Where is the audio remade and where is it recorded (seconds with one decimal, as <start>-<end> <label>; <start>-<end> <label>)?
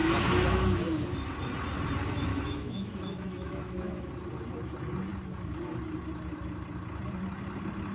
0.0-1.1 remade; 1.1-2.3 recorded; 2.3-4.1 remade; 4.1-7.9 recorded